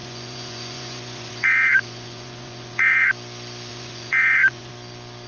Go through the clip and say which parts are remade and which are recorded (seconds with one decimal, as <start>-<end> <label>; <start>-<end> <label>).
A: 0.0-3.1 remade; 3.1-3.7 recorded; 3.7-4.7 remade; 4.7-5.3 recorded